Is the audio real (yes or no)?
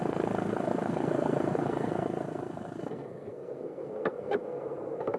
no